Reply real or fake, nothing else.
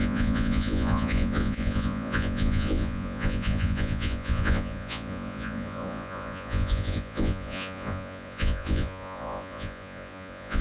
fake